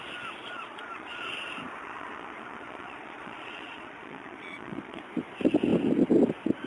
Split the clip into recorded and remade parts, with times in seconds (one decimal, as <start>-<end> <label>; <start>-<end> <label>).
0.0-0.4 recorded; 0.4-1.3 remade; 1.3-1.8 recorded; 1.8-5.0 remade; 5.0-6.7 recorded